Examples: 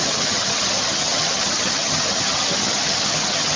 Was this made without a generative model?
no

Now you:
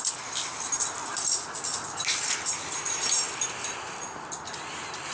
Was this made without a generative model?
yes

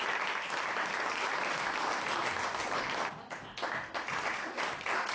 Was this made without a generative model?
yes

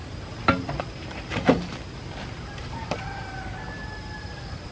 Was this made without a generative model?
yes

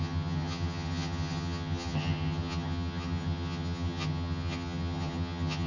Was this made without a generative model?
no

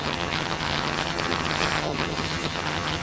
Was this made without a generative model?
no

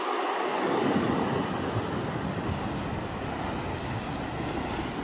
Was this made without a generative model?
yes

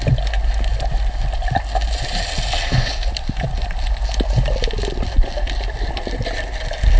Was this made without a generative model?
yes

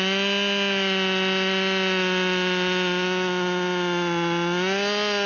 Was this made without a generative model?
yes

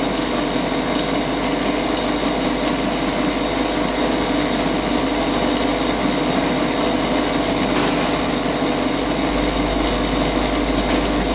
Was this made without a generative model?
yes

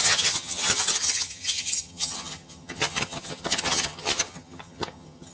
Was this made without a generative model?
no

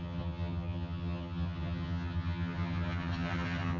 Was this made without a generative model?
no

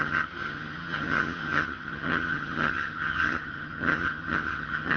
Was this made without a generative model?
no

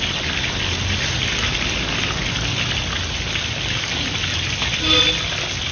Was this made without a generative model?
yes